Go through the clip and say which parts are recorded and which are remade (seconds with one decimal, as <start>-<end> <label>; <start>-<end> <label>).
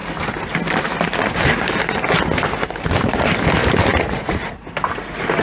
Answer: 0.0-3.9 recorded; 3.9-4.5 remade; 4.5-5.4 recorded